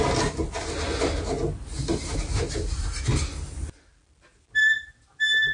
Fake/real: real